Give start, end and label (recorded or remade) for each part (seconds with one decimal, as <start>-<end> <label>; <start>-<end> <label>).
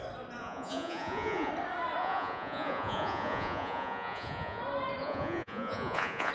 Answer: 0.0-0.4 recorded; 0.4-1.5 remade; 1.5-2.0 recorded; 2.0-4.6 remade; 4.6-5.0 recorded; 5.0-6.3 remade